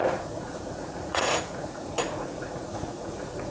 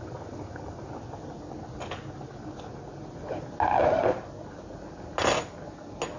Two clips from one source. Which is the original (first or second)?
second